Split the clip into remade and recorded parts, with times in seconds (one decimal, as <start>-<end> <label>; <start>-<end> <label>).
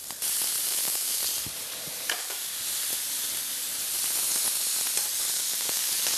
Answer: 0.0-0.6 recorded; 0.6-1.2 remade; 1.2-2.1 recorded; 2.1-2.5 remade; 2.5-5.3 recorded; 5.3-6.2 remade